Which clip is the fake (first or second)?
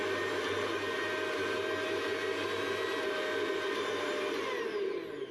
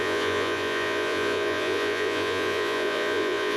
second